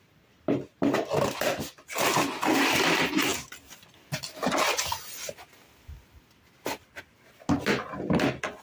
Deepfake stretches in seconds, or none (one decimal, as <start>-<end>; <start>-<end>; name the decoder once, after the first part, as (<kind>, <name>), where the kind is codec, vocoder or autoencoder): none